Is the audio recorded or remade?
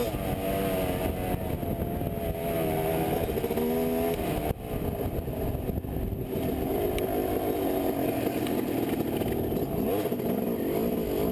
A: recorded